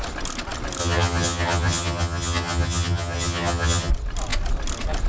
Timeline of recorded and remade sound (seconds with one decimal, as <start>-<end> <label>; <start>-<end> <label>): 0.0-0.8 recorded; 0.8-3.9 remade; 3.9-5.1 recorded